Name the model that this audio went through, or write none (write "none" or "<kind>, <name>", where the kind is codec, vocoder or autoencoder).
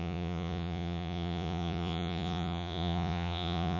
vocoder, Vocos